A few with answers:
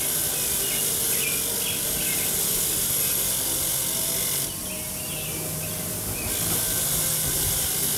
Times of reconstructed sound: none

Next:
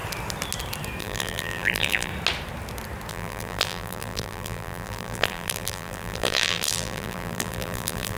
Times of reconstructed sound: 1.0-2.1 (vocoder, BigVGAN v2); 3.1-8.2

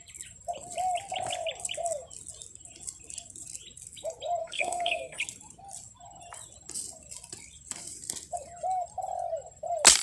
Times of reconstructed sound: 4.4-5.2 (codec, SNAC)